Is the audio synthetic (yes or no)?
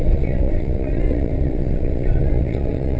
yes